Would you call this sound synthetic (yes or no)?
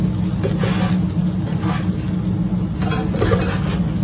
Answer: no